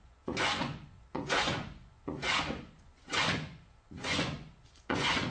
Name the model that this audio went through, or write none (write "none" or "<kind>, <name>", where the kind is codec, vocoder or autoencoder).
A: vocoder, Vocos